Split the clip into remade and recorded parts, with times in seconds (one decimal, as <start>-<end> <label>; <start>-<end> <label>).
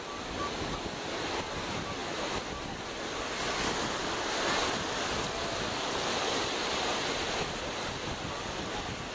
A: 0.0-9.1 recorded